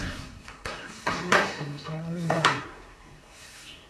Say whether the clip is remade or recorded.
remade